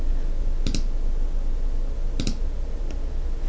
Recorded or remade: recorded